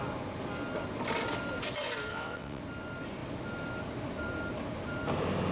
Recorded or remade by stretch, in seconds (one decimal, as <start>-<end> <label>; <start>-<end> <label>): 0.0-2.1 recorded; 2.1-2.6 remade; 2.6-5.5 recorded